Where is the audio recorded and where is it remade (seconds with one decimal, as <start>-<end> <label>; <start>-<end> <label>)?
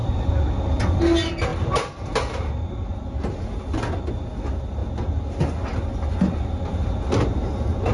0.0-1.0 remade; 1.0-7.9 recorded